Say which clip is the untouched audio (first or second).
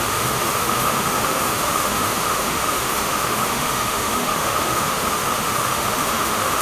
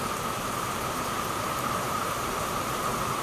second